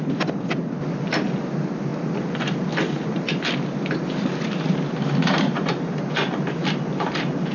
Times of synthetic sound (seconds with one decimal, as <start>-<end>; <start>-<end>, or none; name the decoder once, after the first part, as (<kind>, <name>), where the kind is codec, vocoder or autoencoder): none